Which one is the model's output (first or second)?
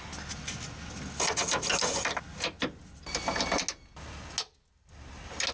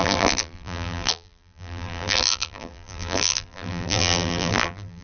second